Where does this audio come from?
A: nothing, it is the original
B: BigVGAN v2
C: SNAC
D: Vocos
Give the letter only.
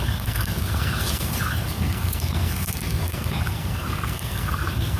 C